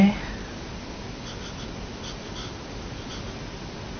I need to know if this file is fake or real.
real